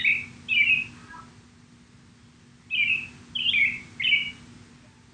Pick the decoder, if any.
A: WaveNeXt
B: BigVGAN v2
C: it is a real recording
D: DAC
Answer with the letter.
C